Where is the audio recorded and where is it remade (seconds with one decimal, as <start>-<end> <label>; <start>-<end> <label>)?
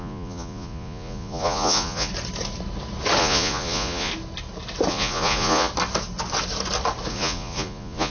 0.0-2.1 remade; 2.1-3.2 recorded; 3.2-4.1 remade; 4.1-4.9 recorded; 4.9-5.7 remade; 5.7-7.1 recorded; 7.1-8.1 remade